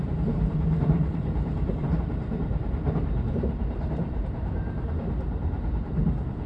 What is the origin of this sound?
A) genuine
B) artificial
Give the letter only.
B